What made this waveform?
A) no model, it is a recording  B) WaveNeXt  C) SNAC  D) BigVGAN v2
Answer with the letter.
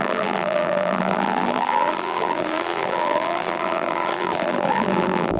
D